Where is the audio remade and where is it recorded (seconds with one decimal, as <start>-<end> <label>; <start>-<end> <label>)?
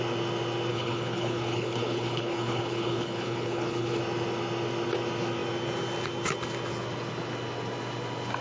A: 0.0-0.7 recorded; 0.7-4.0 remade; 4.0-8.4 recorded